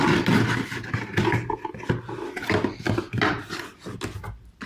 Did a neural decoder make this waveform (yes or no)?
no